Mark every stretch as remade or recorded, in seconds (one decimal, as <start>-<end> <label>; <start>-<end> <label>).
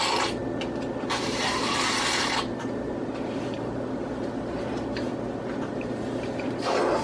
0.0-0.4 remade; 0.4-1.0 recorded; 1.0-7.0 remade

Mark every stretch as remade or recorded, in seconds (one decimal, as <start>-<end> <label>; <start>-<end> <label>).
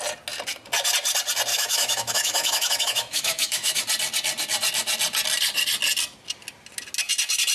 0.0-1.5 recorded; 1.5-3.8 remade; 3.8-7.5 recorded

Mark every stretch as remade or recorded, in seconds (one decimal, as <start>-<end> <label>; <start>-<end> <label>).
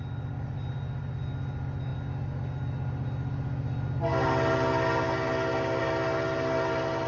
0.0-7.1 recorded